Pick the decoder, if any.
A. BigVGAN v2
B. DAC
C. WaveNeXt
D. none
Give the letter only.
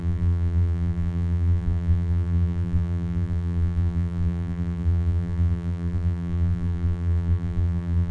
A